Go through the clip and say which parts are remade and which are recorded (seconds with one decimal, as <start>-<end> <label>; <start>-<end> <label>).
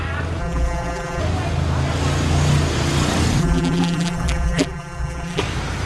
0.0-0.4 recorded; 0.4-1.2 remade; 1.2-3.4 recorded; 3.4-5.4 remade; 5.4-5.9 recorded